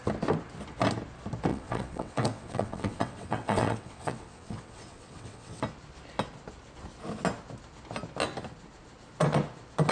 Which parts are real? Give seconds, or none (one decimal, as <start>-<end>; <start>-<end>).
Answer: 0.0-1.5; 5.6-9.9